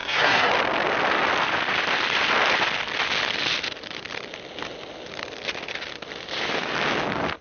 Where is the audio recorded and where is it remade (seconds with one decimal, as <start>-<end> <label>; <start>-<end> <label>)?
0.0-0.5 remade; 0.5-7.4 recorded